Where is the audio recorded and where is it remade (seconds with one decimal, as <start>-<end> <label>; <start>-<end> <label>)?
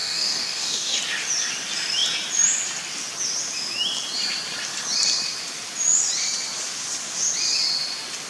0.0-1.0 remade; 1.0-8.3 recorded